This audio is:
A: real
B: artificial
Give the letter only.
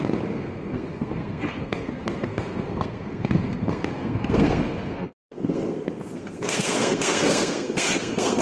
B